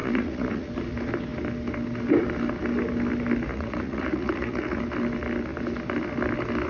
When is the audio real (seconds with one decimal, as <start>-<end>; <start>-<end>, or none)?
0.7-3.5; 4.8-6.7